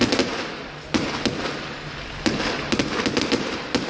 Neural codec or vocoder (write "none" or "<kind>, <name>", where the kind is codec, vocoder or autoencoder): none